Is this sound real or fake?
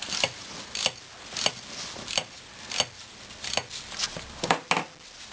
real